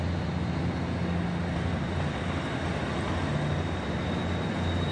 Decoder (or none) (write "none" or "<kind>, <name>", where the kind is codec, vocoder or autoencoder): none